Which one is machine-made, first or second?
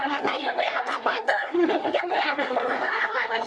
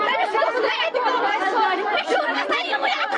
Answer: first